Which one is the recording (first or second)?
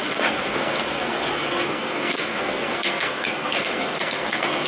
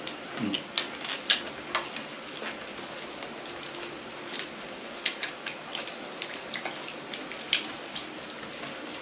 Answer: second